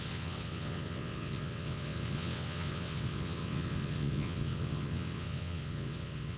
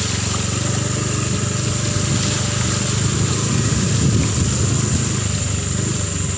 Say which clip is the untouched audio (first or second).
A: second